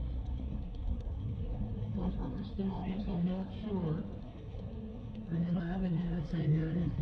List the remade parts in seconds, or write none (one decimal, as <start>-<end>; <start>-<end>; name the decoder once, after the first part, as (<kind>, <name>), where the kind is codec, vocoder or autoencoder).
0.0-3.5 (codec, SNAC); 4.2-7.0